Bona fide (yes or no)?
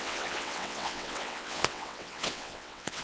no